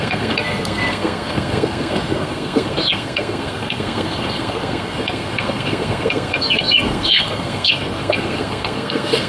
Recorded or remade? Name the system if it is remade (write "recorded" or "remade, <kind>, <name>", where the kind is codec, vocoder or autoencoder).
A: remade, codec, SNAC